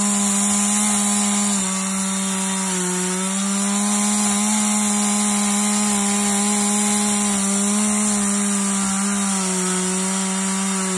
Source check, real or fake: real